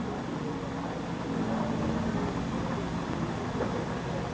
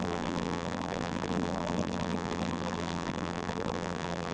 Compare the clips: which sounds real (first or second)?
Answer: first